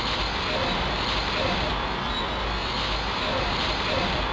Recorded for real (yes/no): no